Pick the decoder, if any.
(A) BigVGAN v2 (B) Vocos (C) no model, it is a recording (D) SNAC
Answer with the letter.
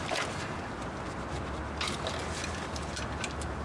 C